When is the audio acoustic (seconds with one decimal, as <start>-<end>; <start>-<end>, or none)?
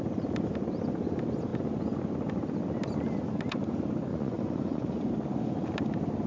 0.0-4.1; 5.1-6.3